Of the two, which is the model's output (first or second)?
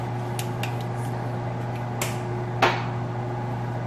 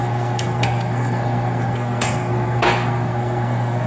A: second